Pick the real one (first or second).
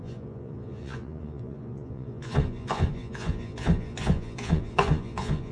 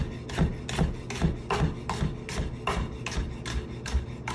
second